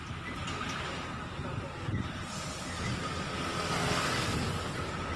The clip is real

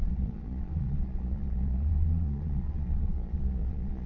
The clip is fake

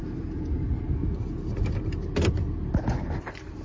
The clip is real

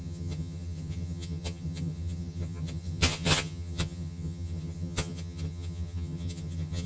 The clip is fake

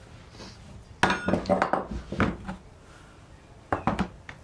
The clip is real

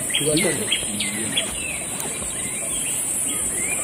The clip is fake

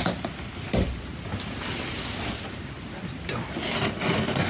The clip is real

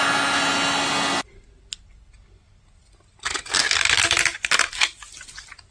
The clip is real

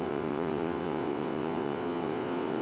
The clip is fake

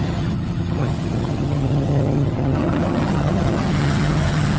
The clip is fake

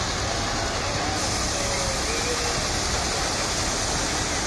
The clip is real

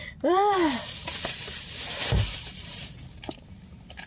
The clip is real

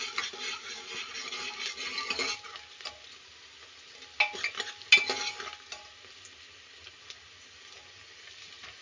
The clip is real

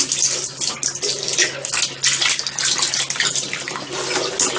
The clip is real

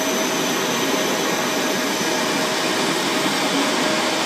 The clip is real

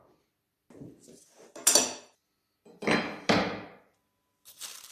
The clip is real